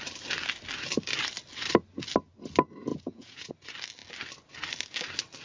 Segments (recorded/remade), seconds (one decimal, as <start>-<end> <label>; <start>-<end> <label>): 0.0-2.9 recorded; 2.9-3.5 remade; 3.5-5.4 recorded